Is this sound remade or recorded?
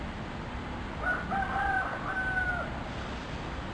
recorded